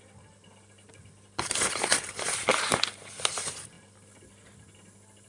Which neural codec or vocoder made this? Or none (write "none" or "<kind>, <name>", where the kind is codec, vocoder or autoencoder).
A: none